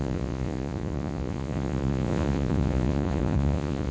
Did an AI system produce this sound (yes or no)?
yes